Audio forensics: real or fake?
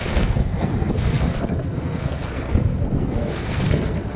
fake